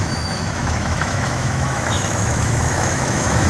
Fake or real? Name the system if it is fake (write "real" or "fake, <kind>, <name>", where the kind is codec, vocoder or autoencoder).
fake, autoencoder, DAC-VAE